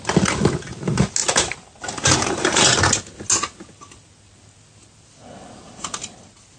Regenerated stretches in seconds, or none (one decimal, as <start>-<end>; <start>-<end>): 1.2-2.8